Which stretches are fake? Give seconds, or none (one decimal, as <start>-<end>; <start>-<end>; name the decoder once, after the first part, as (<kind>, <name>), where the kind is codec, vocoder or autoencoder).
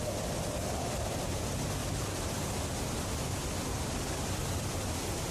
none